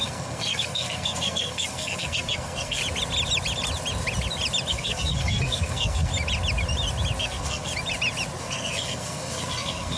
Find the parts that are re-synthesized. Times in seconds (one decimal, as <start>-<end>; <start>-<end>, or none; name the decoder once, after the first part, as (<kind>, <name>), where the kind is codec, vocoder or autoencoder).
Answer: 0.0-2.8 (codec, SNAC); 4.7-6.1; 7.2-7.7; 8.4-10.0